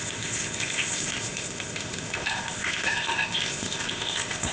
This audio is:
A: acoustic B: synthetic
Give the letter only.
B